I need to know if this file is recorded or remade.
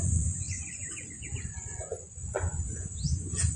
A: remade